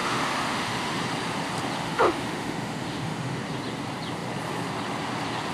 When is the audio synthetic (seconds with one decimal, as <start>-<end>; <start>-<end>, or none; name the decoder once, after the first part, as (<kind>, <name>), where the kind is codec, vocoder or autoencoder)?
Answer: 0.0-1.0 (autoencoder, DAC-VAE); 1.8-3.4